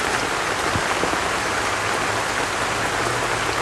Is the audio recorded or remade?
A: recorded